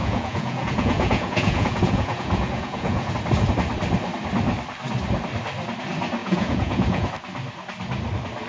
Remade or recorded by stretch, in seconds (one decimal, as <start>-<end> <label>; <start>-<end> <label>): 0.0-3.1 remade; 3.1-6.2 recorded; 6.2-7.1 remade; 7.1-8.5 recorded